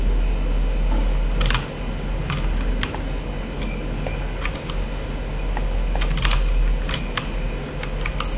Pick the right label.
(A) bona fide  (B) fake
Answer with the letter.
A